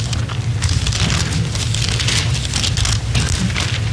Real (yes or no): yes